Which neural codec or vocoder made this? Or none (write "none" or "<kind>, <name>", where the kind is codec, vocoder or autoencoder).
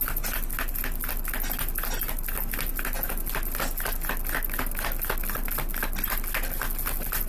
none